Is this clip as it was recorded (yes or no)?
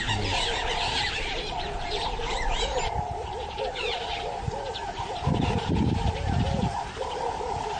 no